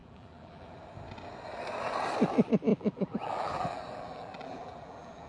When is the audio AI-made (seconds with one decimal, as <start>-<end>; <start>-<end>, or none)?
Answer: 0.0-0.8; 2.7-5.3